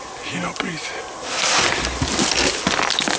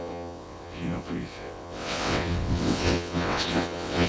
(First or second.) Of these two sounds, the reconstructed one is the second